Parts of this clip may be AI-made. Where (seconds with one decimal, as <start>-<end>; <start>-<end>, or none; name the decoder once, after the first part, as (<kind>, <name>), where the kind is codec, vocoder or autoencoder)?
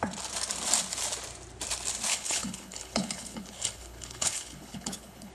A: 2.1-5.3 (codec, HILCodec)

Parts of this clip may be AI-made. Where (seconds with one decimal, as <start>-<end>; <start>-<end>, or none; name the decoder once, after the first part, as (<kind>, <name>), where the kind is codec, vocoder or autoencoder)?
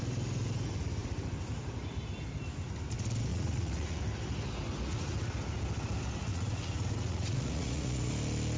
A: 3.3-4.0 (vocoder, Vocos); 6.3-8.1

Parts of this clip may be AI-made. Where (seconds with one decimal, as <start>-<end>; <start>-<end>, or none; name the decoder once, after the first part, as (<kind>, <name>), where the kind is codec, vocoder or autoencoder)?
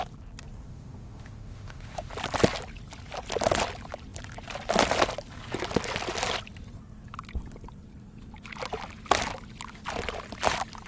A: 0.7-2.1 (autoencoder, DAC-VAE)